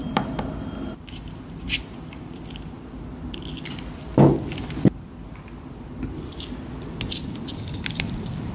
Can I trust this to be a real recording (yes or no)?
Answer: yes